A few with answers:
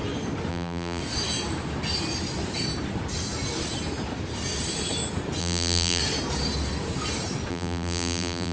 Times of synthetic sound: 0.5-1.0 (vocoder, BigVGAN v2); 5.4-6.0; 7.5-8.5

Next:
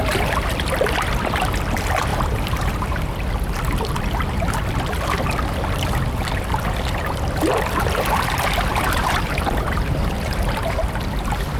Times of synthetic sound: 2.1-3.0 (vocoder, BigVGAN v2); 8.7-10.8